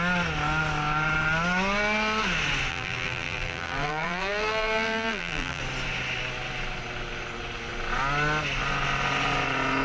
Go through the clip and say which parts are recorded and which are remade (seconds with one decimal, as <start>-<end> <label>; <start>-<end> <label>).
0.0-2.7 recorded; 2.7-5.6 remade; 5.6-9.8 recorded